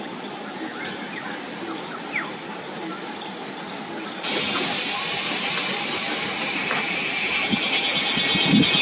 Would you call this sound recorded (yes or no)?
yes